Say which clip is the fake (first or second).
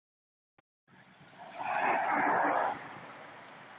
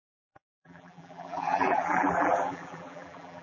second